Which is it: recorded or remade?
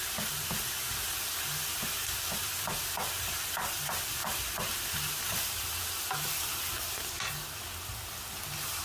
recorded